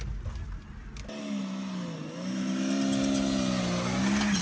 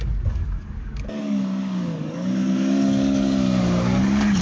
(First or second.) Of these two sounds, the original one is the first